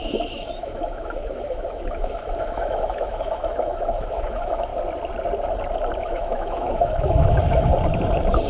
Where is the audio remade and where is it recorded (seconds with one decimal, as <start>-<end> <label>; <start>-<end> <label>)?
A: 0.0-4.7 remade; 4.7-6.0 recorded; 6.0-7.7 remade; 7.7-8.5 recorded